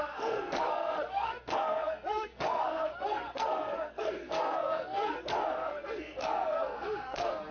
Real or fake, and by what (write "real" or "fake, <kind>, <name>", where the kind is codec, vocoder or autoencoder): fake, codec, SNAC